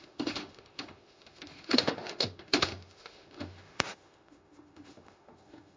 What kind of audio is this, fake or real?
fake